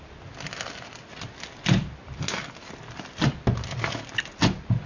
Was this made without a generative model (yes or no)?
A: yes